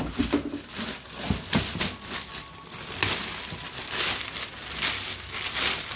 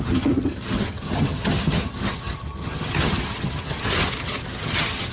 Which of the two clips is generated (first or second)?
second